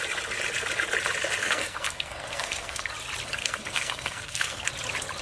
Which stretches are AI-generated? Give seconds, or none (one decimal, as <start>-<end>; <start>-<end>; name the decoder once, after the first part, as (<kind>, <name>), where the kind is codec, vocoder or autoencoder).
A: 1.4-2.9 (codec, SNAC); 3.4-4.7